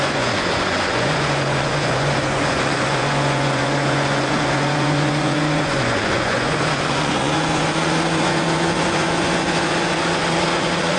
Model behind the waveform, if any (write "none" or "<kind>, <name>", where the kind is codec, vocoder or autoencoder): vocoder, Vocos